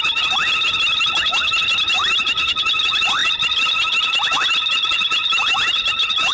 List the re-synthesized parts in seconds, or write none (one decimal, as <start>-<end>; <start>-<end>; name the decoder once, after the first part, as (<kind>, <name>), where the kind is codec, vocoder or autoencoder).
0.0-0.4 (vocoder, BigVGAN v2); 2.8-6.3